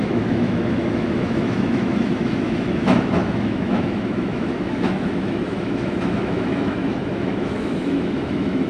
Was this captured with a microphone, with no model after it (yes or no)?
no